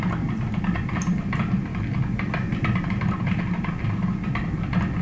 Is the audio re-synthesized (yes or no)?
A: no